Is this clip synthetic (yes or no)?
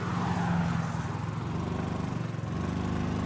no